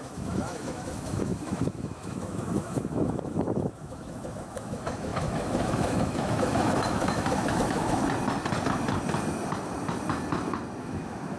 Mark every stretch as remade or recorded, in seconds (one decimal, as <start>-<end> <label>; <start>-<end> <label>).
0.0-8.0 remade; 8.0-10.8 recorded; 10.8-11.4 remade